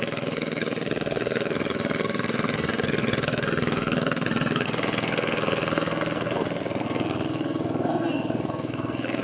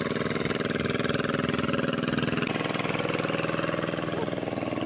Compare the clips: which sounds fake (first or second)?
first